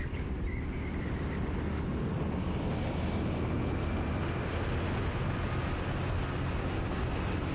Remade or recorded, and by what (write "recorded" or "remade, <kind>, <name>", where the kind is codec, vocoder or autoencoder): recorded